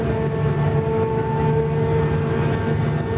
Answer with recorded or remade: recorded